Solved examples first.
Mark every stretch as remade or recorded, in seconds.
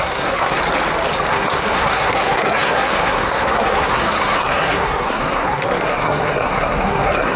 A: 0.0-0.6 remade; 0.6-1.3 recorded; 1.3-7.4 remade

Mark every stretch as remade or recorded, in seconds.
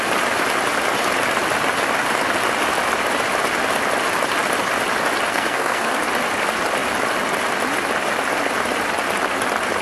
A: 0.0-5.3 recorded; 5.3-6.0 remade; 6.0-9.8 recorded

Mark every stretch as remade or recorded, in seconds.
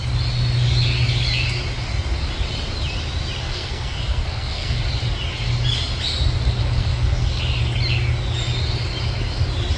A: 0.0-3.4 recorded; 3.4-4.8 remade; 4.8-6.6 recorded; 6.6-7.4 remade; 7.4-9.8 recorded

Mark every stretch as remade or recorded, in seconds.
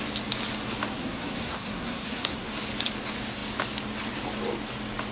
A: 0.0-0.9 recorded; 0.9-2.5 remade; 2.5-5.1 recorded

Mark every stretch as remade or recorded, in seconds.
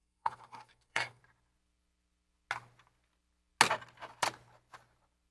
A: 0.0-1.2 remade; 1.2-5.3 recorded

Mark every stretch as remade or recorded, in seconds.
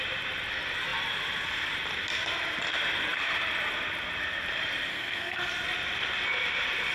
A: 0.0-4.9 recorded; 4.9-5.5 remade; 5.5-6.9 recorded